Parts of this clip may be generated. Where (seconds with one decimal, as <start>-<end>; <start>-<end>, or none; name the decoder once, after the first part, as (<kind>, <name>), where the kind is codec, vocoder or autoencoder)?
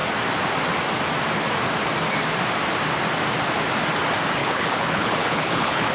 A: 4.4-5.9 (codec, HILCodec)